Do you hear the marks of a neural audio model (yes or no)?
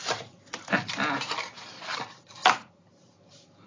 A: no